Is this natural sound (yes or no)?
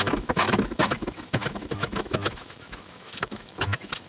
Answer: no